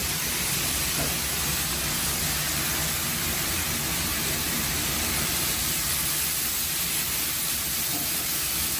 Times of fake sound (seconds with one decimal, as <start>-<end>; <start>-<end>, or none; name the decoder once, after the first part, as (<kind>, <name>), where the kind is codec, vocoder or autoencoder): 4.1-8.4 (vocoder, BigVGAN v2)